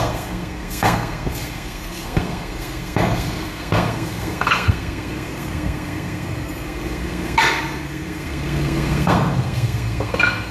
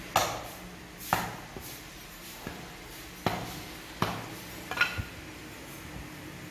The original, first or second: second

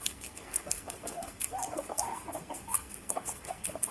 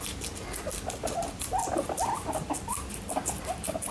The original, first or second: second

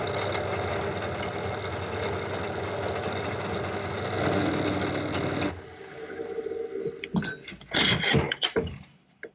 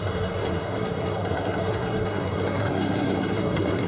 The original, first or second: first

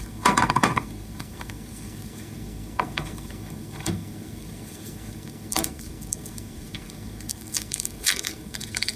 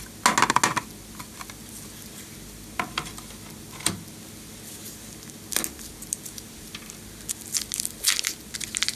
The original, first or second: second